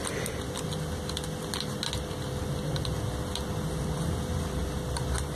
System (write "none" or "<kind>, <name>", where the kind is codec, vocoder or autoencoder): none